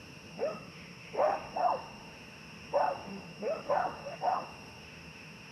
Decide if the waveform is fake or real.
fake